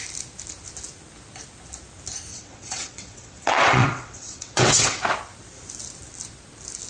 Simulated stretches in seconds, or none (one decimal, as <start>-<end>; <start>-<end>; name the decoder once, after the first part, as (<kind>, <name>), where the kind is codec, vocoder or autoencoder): 2.3-5.0 (vocoder, WaveNeXt)